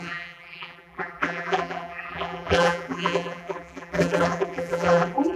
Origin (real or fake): fake